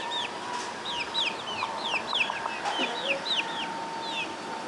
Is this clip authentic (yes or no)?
yes